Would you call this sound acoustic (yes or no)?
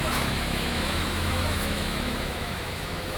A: no